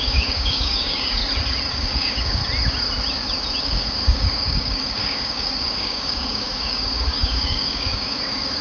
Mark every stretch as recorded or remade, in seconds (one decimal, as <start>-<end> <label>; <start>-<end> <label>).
0.0-1.2 remade; 1.2-1.7 recorded; 1.7-2.4 remade; 2.4-3.6 recorded; 3.6-8.6 remade